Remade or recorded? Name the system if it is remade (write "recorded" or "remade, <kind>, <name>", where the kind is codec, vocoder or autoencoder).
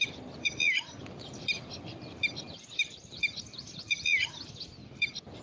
recorded